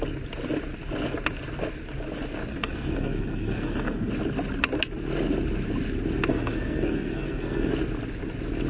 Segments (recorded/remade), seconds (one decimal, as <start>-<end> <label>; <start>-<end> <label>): 0.0-2.5 recorded; 2.5-4.1 remade; 4.1-6.3 recorded; 6.3-7.7 remade; 7.7-8.7 recorded